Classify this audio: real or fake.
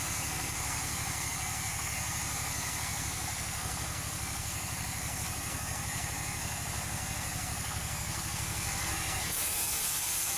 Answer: fake